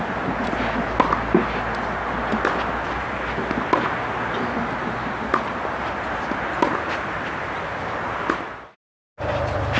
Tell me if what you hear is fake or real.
real